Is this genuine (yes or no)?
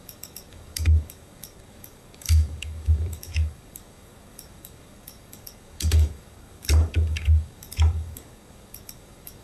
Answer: no